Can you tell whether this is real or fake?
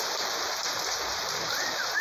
fake